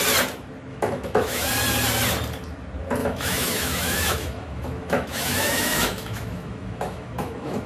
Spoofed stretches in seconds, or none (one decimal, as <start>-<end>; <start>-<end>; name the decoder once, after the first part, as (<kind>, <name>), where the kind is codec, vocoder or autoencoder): 0.7-1.5 (autoencoder, DAC-VAE); 3.0-7.7